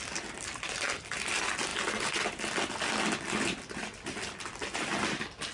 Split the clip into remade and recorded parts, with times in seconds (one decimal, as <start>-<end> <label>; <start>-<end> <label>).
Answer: 0.0-5.5 recorded